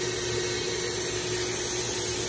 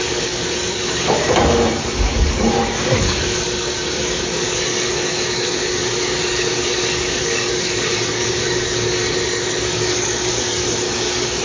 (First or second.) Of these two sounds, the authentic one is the first